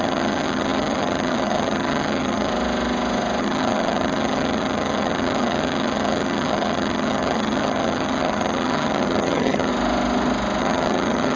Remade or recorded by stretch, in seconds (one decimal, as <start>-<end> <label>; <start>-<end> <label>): 0.0-2.5 remade; 2.5-3.4 recorded; 3.4-9.7 remade; 9.7-10.6 recorded; 10.6-11.4 remade